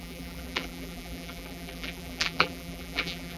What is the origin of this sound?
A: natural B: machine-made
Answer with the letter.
B